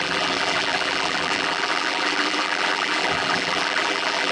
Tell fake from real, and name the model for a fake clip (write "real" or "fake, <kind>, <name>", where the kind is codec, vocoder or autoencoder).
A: fake, vocoder, BigVGAN v2